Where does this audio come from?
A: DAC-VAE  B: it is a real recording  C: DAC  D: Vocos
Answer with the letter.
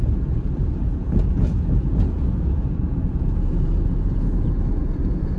D